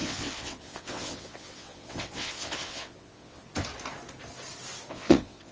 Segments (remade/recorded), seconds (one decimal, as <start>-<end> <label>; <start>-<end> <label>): 0.0-3.4 remade; 3.4-4.9 recorded; 4.9-5.5 remade